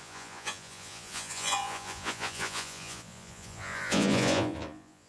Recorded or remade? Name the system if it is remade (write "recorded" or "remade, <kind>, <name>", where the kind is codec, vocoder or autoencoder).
remade, vocoder, Vocos